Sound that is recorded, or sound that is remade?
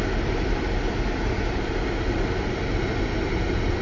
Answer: recorded